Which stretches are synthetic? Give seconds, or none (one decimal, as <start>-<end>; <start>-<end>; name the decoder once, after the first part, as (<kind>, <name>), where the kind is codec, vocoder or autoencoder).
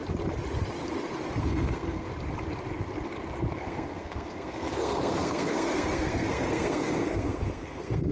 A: 1.4-2.1 (codec, SNAC); 3.5-8.1